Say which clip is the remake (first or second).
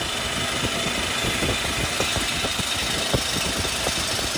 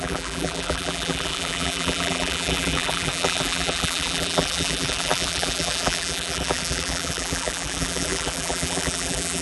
second